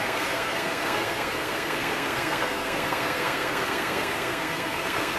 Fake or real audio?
fake